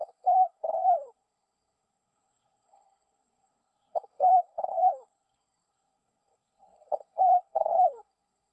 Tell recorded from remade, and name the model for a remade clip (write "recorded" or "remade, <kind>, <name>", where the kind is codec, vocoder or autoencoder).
remade, codec, SNAC